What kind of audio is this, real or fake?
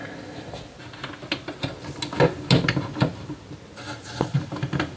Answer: real